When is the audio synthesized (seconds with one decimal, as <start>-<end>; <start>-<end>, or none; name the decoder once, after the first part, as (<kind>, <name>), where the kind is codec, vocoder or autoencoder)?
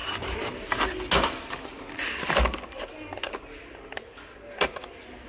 none